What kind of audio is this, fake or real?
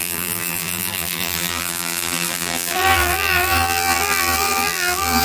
fake